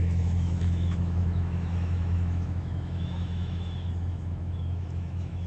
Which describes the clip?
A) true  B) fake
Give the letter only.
B